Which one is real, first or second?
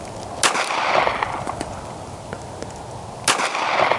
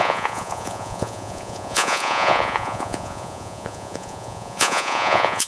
first